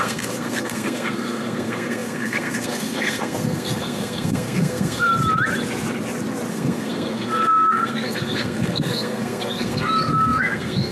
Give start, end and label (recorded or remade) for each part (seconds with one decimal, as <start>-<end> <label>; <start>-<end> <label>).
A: 0.0-5.1 remade; 5.1-6.5 recorded; 6.5-10.9 remade